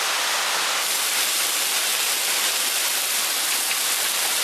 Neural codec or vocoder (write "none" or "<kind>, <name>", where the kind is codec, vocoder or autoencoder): none